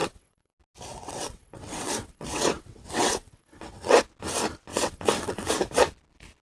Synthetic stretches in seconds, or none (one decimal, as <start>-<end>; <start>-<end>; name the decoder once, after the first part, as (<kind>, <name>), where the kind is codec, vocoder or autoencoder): 0.0-0.5 (vocoder, WaveNeXt); 0.9-4.0; 4.7-5.5